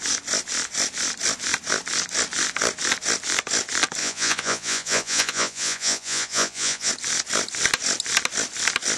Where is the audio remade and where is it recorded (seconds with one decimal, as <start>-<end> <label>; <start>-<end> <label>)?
0.0-4.0 recorded; 4.0-6.9 remade; 6.9-9.0 recorded